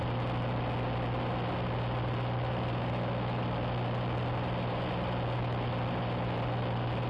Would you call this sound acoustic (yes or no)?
yes